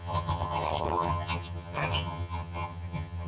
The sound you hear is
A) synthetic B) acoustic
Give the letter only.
A